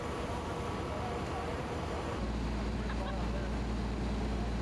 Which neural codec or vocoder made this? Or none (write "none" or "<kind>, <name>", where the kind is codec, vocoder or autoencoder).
none